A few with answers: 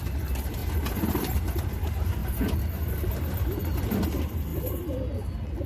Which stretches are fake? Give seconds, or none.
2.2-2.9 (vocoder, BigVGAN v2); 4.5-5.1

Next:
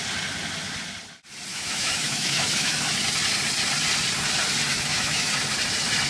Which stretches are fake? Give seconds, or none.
1.5-2.9 (autoencoder, DAC-VAE); 4.7-5.3

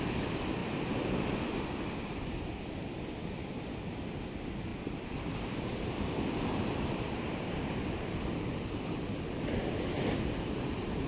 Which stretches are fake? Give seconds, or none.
0.0-11.1 (vocoder, BigVGAN v2)